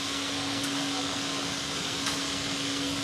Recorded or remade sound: remade